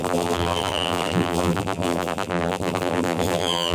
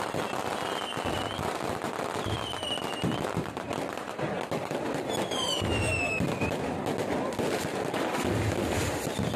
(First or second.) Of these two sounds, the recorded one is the second